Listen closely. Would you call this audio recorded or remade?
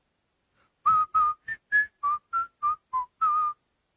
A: recorded